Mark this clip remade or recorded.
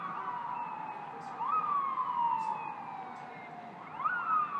recorded